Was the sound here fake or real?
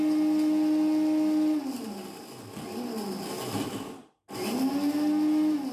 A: real